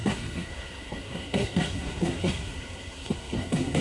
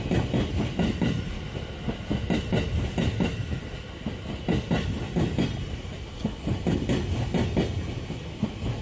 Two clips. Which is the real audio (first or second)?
second